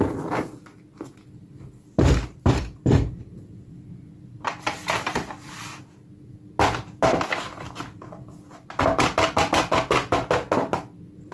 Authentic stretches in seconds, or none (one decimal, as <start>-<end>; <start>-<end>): 0.0-1.4; 5.9-7.1; 9.4-11.3